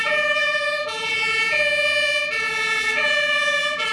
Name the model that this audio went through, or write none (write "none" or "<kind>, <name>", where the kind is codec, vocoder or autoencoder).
vocoder, BigVGAN v2